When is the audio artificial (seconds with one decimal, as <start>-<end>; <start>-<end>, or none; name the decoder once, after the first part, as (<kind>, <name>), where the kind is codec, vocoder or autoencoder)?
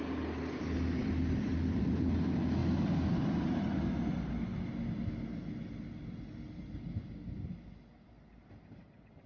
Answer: none